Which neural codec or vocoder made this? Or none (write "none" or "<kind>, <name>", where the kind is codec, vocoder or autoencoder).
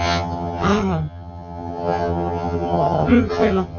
vocoder, HiFi-GAN